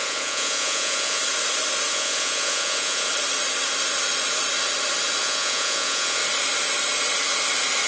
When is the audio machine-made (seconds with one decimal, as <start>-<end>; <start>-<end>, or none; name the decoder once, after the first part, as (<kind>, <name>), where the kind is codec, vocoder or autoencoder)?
0.0-1.2 (vocoder, Vocos); 1.9-3.1; 5.2-6.2